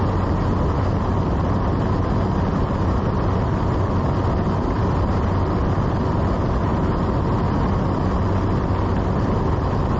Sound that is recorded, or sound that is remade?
recorded